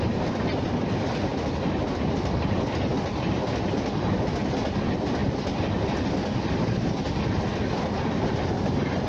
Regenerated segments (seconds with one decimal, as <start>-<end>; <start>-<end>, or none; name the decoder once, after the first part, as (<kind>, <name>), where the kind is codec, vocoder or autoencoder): none